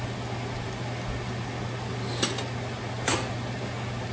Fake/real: real